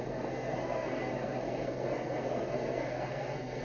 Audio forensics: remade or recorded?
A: remade